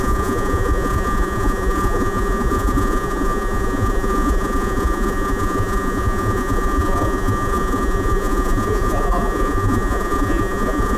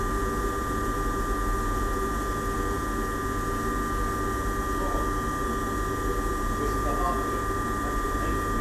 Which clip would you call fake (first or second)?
first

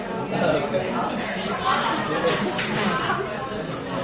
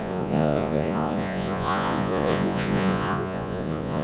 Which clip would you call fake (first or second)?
second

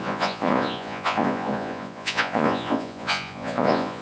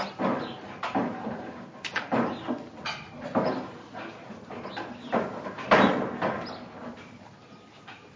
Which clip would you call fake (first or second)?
first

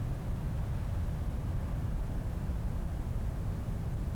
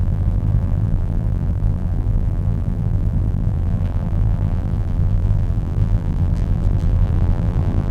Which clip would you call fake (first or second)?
second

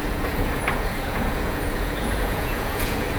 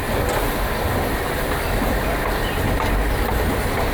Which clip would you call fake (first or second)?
first